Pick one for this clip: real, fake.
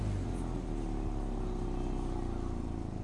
real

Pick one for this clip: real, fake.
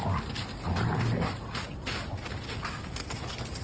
real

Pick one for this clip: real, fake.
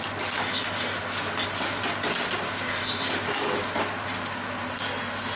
real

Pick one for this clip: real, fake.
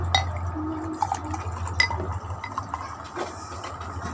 real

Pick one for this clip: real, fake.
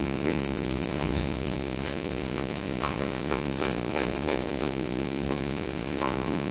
fake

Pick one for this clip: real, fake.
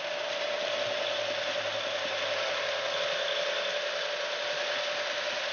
real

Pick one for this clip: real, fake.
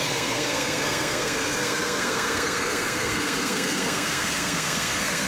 fake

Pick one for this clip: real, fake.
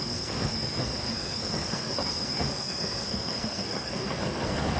fake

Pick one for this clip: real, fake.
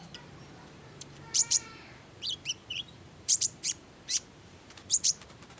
fake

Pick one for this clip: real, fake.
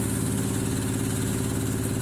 real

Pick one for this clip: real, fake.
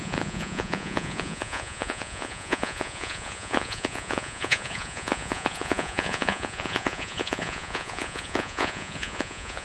fake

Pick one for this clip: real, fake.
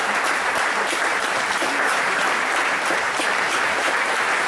fake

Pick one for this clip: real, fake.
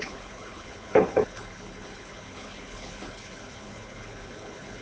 fake